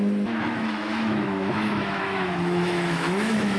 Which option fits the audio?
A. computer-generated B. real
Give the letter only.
A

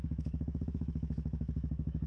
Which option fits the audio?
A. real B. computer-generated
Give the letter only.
B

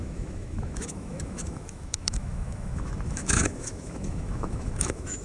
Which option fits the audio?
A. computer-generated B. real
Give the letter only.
A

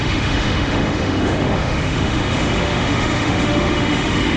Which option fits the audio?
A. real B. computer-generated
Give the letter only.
B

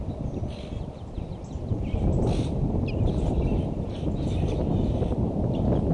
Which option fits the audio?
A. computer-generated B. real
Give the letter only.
B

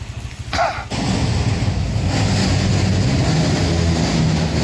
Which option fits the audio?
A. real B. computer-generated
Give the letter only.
A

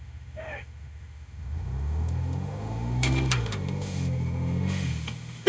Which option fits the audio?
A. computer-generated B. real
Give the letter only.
A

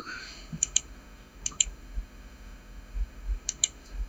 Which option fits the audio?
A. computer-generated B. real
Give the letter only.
A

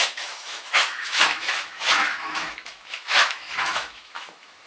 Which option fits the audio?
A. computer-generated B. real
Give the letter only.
A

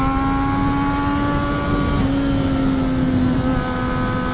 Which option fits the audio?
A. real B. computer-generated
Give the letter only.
A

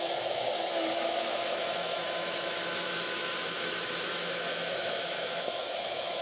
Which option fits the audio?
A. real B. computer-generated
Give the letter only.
B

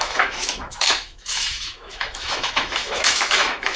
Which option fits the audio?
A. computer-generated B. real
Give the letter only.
A